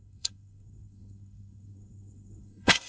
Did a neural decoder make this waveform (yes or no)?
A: yes